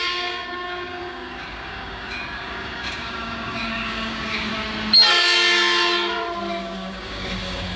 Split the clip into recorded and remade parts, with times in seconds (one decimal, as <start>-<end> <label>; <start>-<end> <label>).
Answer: 0.0-4.5 remade; 4.5-6.6 recorded; 6.6-7.8 remade

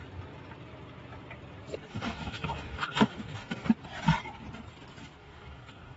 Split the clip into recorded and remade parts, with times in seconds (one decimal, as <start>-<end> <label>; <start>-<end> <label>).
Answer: 0.0-1.9 recorded; 1.9-3.7 remade; 3.7-5.2 recorded; 5.2-6.0 remade

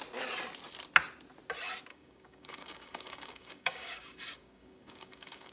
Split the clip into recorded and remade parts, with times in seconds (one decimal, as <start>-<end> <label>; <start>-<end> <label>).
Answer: 0.0-1.9 recorded; 1.9-5.5 remade